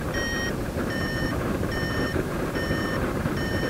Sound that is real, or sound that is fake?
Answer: fake